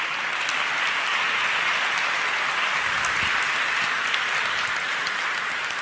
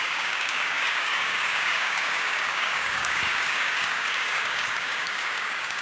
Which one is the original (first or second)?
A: first